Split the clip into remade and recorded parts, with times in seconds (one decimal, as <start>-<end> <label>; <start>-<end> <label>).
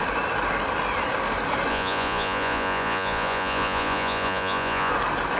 0.0-1.7 recorded; 1.7-4.9 remade; 4.9-5.4 recorded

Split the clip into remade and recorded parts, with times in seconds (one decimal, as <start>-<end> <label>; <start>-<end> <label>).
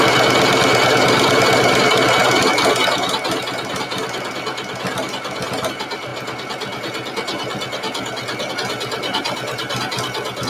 0.0-10.5 recorded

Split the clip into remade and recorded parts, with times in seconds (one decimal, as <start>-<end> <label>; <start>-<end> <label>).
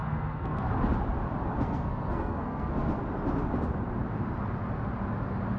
0.0-0.7 remade; 0.7-1.5 recorded; 1.5-3.0 remade; 3.0-5.6 recorded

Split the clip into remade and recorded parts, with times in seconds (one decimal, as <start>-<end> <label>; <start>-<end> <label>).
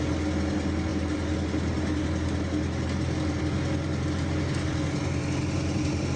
0.0-6.2 recorded